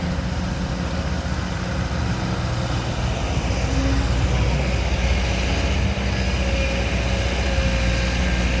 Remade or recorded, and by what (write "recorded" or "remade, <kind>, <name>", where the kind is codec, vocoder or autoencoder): recorded